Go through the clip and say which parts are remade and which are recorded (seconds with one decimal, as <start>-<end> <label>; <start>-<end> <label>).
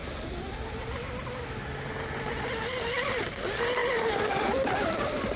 0.0-5.4 recorded